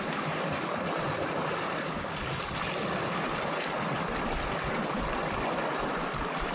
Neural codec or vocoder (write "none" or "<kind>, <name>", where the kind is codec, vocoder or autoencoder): none